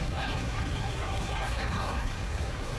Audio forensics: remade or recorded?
remade